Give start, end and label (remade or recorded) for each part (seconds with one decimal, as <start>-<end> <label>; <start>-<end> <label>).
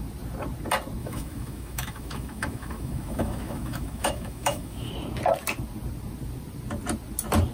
0.0-1.0 recorded; 1.0-4.9 remade; 4.9-7.5 recorded